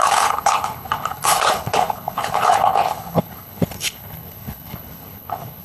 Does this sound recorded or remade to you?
remade